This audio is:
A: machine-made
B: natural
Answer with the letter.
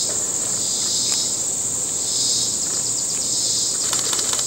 A